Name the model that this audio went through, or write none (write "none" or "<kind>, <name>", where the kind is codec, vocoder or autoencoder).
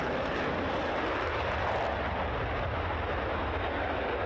none